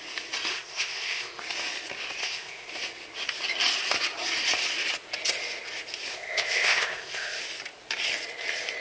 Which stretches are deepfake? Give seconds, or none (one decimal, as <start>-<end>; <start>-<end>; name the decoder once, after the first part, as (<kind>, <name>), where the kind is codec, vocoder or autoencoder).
0.5-1.4 (codec, ZipCodec); 2.2-2.7; 6.1-7.4